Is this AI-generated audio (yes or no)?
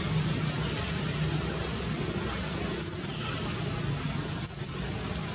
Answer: no